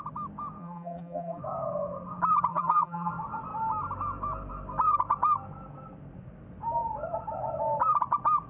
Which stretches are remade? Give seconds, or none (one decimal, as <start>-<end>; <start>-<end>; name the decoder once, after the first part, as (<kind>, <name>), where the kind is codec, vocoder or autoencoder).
0.6-1.4 (vocoder, BigVGAN v2); 2.5-3.1